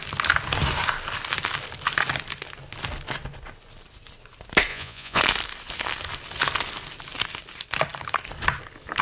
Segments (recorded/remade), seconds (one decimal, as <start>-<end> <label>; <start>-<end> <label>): 0.0-4.7 recorded; 4.7-5.2 remade; 5.2-9.0 recorded